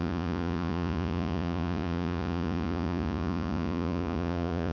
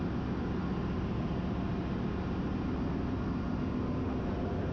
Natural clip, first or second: second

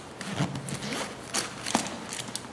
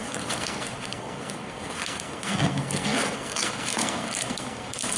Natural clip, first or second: first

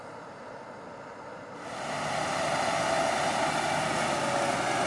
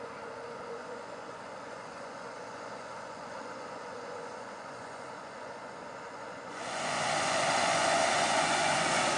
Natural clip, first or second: first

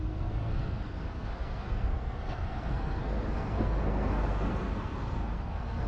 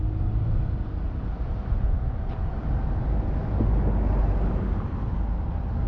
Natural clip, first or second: second